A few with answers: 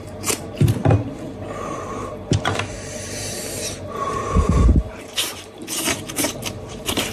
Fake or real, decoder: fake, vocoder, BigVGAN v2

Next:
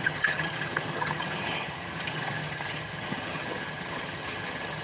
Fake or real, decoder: fake, vocoder, HiFi-GAN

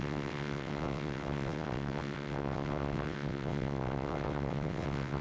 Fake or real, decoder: fake, vocoder, WaveNeXt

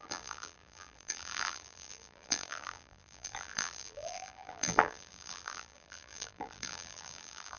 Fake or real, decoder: fake, vocoder, BigVGAN v2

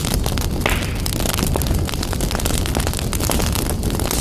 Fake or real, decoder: real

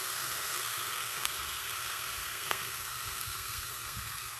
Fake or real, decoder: fake, codec, SNAC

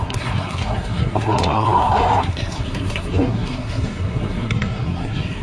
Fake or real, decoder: fake, codec, SNAC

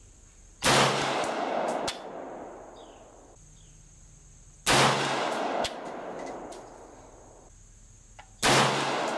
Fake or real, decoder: real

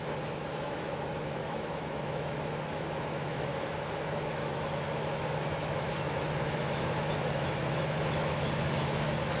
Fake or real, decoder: fake, autoencoder, DAC-VAE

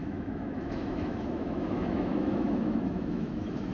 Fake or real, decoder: fake, autoencoder, DAC-VAE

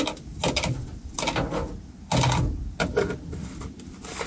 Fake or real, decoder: real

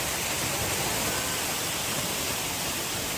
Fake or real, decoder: fake, vocoder, BigVGAN v2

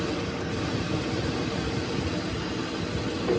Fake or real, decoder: real